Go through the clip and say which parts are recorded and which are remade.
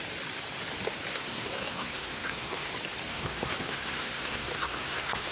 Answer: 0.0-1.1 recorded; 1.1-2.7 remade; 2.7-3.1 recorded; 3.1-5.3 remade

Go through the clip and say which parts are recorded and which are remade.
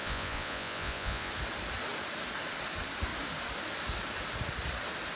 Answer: 0.0-1.3 remade; 1.3-5.2 recorded